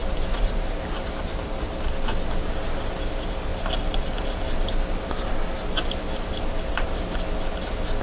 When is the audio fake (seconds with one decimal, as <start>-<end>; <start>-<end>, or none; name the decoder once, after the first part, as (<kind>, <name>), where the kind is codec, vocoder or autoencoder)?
none